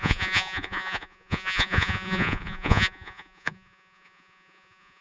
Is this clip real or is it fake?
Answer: fake